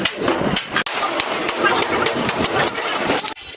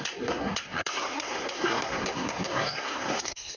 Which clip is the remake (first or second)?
second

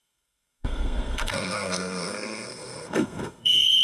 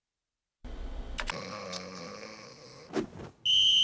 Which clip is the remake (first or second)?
first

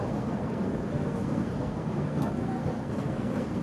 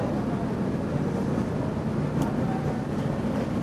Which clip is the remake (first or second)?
first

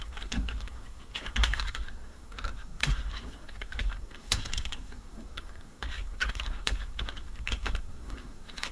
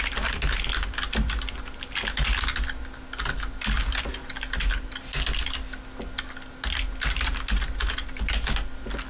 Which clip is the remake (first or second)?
first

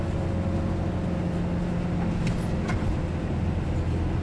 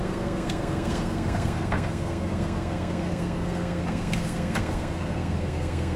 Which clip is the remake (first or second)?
second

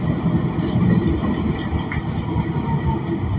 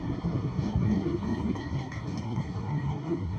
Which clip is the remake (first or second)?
second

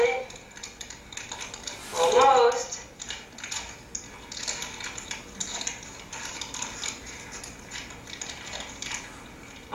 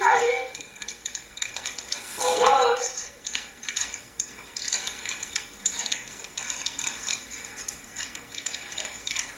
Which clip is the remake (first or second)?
second